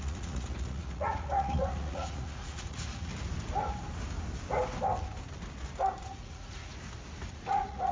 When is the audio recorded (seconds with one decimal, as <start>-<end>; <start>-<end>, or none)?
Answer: 3.1-6.0; 6.7-7.3